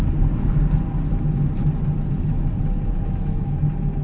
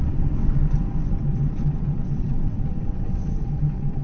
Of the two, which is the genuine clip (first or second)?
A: first